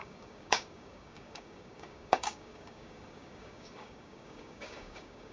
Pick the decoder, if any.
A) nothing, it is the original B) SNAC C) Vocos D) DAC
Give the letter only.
D